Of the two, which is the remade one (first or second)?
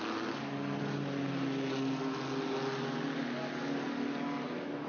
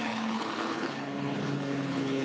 second